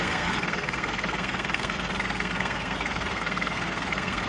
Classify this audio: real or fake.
fake